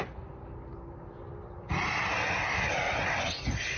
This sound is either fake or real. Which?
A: real